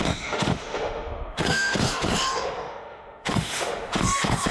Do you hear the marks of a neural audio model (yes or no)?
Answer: yes